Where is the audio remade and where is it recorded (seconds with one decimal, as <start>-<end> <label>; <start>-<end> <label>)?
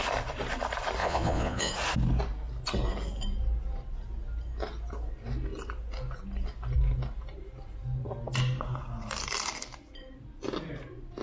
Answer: 0.0-1.0 recorded; 1.0-1.7 remade; 1.7-11.2 recorded